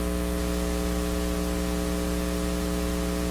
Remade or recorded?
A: recorded